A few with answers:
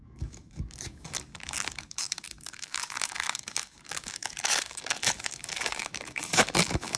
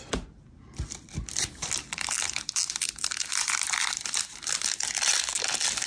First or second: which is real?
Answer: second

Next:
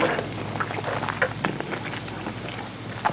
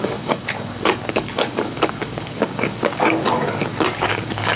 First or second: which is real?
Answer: first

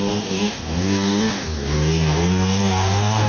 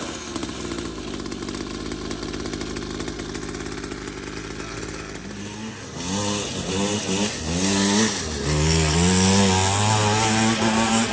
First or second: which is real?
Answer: second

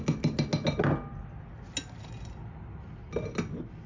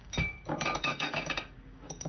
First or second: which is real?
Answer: first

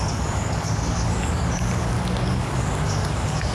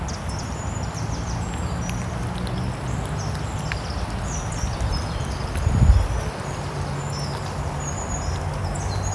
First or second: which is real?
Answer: second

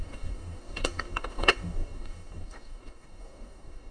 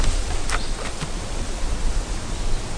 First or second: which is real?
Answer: second